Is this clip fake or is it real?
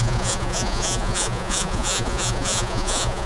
fake